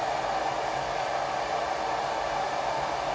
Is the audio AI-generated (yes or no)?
no